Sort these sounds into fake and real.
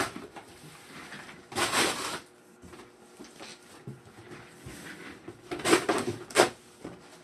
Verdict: real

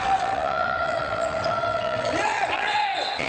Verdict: fake